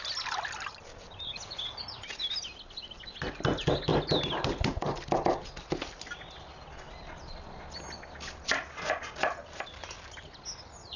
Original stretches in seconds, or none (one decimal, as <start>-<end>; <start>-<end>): 0.0-11.0